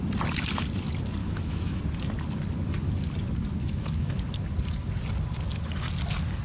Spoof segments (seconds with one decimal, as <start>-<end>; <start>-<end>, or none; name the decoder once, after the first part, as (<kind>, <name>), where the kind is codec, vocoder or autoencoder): 1.2-1.8 (autoencoder, DAC-VAE); 3.6-4.2